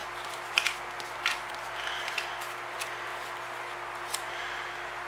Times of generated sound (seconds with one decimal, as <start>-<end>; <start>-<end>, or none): none